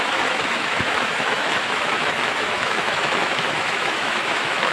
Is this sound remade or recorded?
remade